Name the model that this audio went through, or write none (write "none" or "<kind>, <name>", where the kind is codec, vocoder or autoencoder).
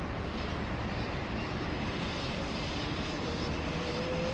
vocoder, BigVGAN v2